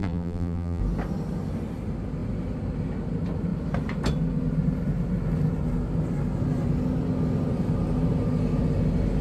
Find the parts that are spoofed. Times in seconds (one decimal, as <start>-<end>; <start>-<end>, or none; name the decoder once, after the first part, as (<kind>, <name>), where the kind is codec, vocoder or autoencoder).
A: 0.0-0.8 (vocoder, BigVGAN v2)